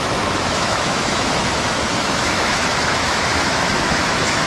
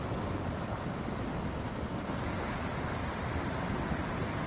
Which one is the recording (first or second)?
second